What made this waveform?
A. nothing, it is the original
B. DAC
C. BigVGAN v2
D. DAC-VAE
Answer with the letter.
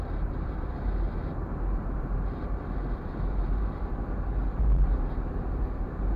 C